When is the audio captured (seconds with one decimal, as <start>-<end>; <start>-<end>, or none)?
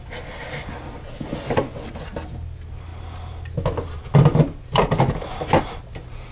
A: 0.0-6.3